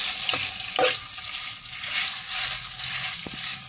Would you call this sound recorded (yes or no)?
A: yes